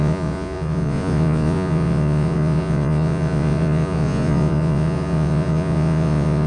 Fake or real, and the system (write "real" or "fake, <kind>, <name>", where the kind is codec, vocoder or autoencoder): fake, vocoder, Vocos